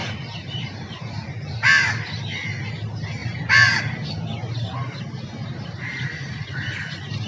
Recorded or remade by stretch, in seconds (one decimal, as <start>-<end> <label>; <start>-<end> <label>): 0.0-0.9 remade; 0.9-3.2 recorded; 3.2-3.8 remade; 3.8-5.4 recorded; 5.4-7.3 remade

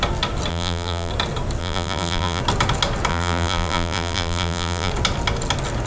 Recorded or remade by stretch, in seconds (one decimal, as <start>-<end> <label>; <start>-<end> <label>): 0.0-0.5 recorded; 0.5-1.1 remade; 1.1-1.6 recorded; 1.6-2.4 remade; 2.4-3.1 recorded; 3.1-4.9 remade; 4.9-5.9 recorded

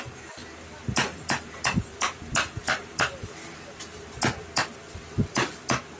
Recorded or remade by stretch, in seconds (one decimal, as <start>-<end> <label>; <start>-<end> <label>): 0.0-0.4 recorded; 0.4-3.8 remade; 3.8-4.8 recorded; 4.8-5.5 remade; 5.5-6.0 recorded

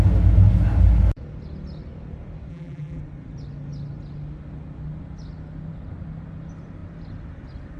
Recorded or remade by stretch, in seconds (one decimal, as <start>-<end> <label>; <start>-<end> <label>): 0.0-2.5 recorded; 2.5-3.0 remade; 3.0-7.8 recorded